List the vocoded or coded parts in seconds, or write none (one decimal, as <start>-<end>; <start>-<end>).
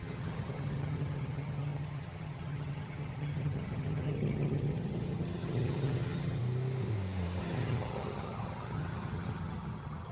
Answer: 0.0-6.4; 7.4-10.1